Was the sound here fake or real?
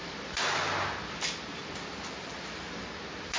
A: real